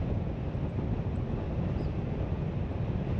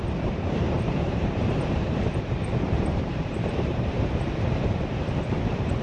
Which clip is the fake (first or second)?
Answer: second